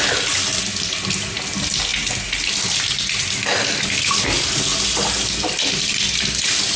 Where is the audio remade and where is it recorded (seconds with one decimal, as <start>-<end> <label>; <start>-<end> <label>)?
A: 0.0-6.8 recorded